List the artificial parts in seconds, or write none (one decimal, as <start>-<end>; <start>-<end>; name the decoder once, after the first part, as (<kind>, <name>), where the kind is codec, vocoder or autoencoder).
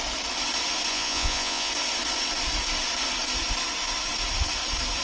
0.9-1.7 (vocoder, Vocos)